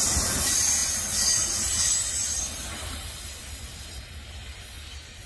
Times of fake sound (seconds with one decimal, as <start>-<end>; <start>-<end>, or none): 0.8-4.0